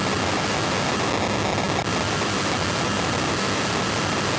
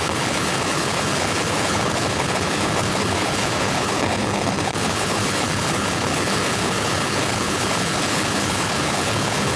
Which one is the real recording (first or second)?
first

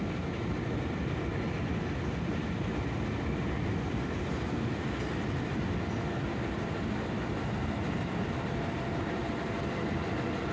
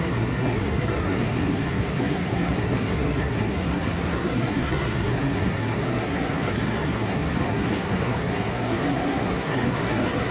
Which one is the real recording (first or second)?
first